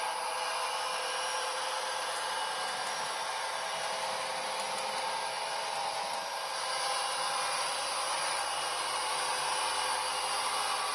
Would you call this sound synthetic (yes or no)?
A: no